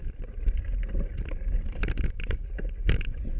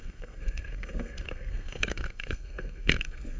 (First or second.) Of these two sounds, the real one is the first